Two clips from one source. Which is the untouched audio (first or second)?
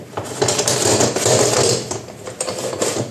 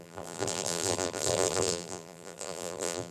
first